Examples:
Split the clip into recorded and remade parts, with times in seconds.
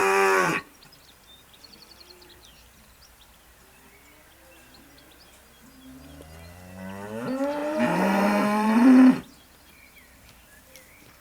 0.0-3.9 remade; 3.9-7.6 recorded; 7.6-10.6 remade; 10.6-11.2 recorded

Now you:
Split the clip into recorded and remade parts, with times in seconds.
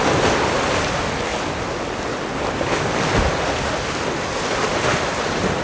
0.0-5.6 recorded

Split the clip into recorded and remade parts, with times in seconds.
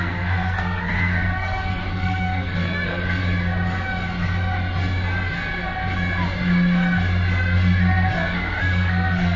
0.0-3.2 remade; 3.2-8.3 recorded; 8.3-9.4 remade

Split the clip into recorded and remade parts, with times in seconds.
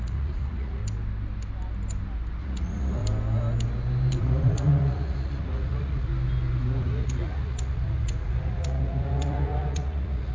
0.0-0.8 remade; 0.8-2.4 recorded; 2.4-3.0 remade; 3.0-4.2 recorded; 4.2-6.1 remade; 6.1-6.8 recorded; 6.8-10.3 remade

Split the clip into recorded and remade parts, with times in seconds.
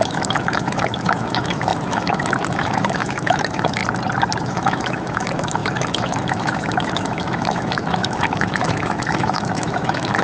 0.0-3.8 remade; 3.8-4.4 recorded; 4.4-10.2 remade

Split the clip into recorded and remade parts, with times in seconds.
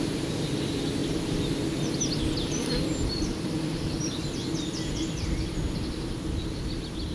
0.0-7.1 recorded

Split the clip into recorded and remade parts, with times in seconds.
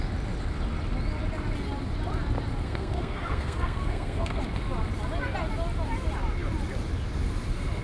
0.0-2.6 recorded; 2.6-4.4 remade; 4.4-7.8 recorded